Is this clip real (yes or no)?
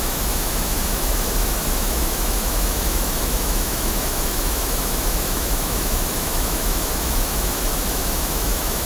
no